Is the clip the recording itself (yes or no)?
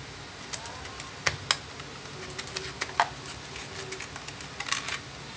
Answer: yes